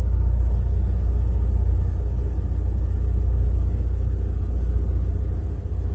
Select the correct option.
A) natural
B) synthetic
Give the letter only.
A